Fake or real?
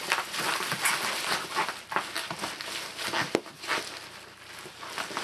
real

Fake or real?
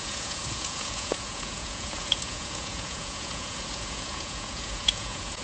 fake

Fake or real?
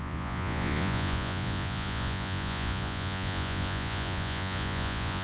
fake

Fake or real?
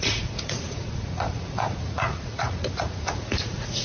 fake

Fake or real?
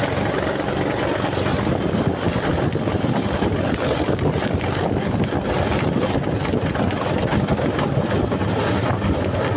real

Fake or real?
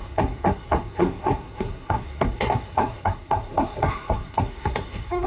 fake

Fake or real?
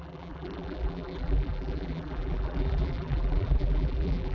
fake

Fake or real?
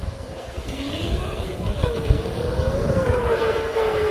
fake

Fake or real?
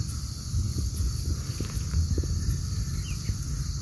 real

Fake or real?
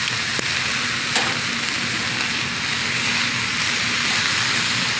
real